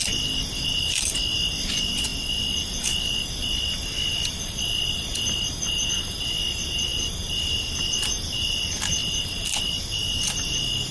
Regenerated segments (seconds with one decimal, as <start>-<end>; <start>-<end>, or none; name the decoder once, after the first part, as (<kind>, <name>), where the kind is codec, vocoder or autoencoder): none